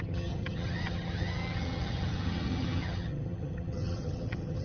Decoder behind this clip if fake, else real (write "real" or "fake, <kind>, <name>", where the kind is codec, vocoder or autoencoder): fake, vocoder, HiFi-GAN